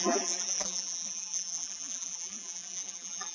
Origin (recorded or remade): remade